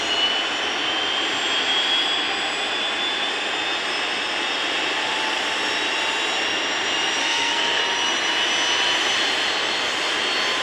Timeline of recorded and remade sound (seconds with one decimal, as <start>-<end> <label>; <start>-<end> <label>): 0.0-7.2 recorded; 7.2-7.8 remade; 7.8-10.6 recorded